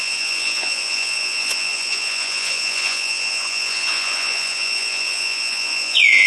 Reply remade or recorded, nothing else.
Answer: remade